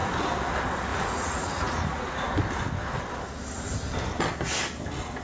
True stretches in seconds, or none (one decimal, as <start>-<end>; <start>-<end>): 0.0-0.9; 2.3-5.2